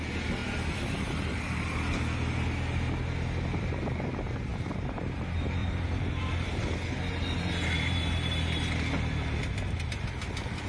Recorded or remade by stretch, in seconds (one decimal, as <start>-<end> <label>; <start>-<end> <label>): 0.0-0.4 recorded; 0.4-1.4 remade; 1.4-5.6 recorded; 5.6-6.2 remade; 6.2-10.7 recorded